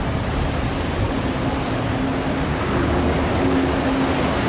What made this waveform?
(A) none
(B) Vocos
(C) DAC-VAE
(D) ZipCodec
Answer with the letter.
A